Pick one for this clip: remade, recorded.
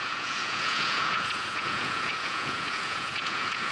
remade